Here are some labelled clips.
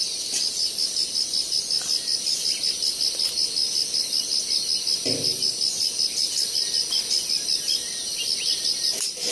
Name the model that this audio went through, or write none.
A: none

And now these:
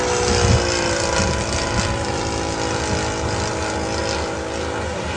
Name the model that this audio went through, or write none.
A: none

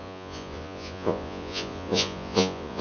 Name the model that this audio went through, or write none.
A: vocoder, Vocos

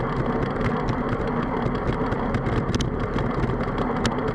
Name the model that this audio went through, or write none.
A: none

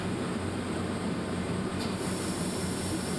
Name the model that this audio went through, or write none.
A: none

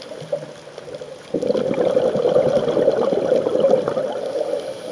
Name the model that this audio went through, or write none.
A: none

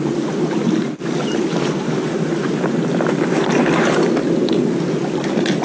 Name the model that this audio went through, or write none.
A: none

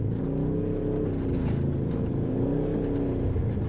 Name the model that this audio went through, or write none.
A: none